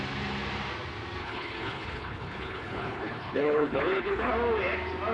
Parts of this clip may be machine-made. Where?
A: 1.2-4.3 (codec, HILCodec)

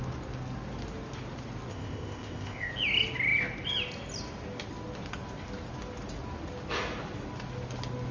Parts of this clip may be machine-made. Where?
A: 1.7-2.7 (codec, ZipCodec)

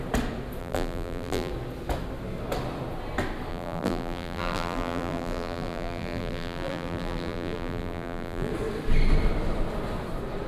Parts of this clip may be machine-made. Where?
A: 0.6-1.5 (vocoder, BigVGAN v2); 3.5-8.5